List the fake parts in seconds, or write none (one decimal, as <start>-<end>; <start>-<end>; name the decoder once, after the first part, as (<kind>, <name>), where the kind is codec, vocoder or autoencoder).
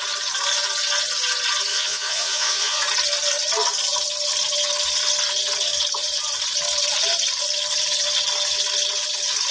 1.7-2.8 (vocoder, Vocos)